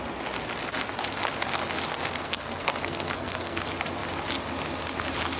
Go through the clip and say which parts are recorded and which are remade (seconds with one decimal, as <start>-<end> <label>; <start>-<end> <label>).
0.0-1.9 recorded; 1.9-3.6 remade; 3.6-5.4 recorded